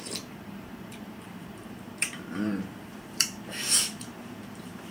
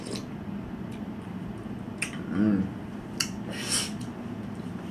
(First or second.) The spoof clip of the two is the first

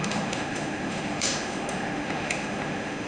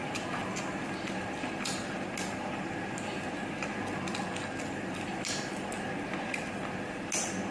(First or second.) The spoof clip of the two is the first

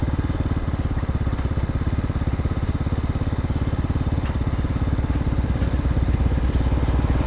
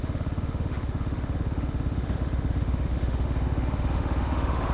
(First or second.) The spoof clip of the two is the second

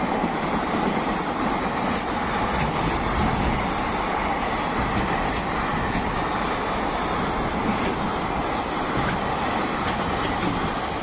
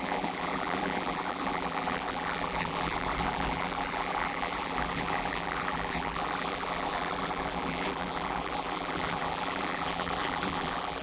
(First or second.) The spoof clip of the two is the second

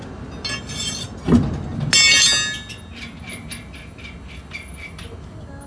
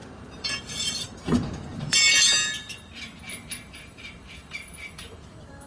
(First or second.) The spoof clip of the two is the second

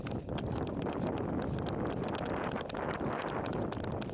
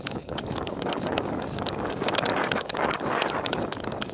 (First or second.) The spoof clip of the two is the second